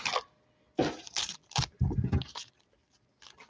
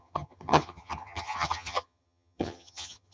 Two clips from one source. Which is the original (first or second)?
first